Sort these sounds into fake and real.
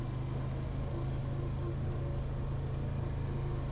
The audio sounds real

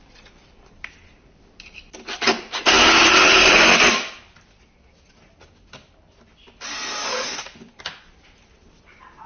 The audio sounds fake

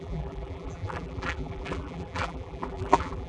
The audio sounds fake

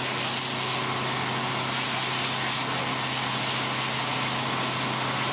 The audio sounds real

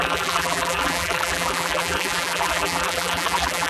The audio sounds fake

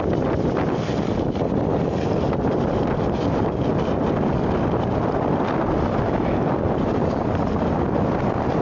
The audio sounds real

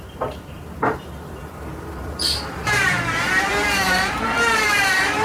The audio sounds fake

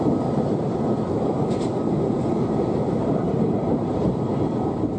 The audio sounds fake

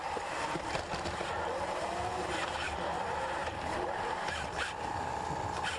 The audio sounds fake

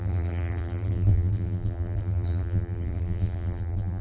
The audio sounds fake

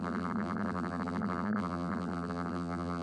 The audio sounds fake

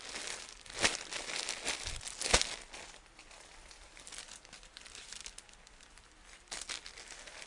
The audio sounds real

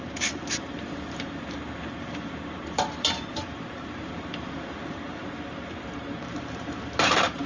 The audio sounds fake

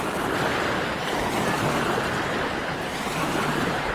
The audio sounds fake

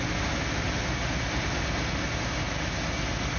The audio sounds real